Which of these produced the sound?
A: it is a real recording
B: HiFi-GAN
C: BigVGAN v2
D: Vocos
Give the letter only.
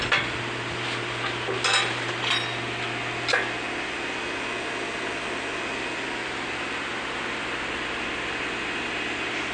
A